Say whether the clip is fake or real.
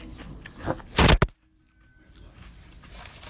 real